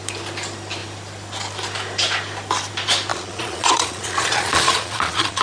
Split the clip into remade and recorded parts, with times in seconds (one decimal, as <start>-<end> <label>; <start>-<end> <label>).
0.0-3.1 recorded; 3.1-5.4 remade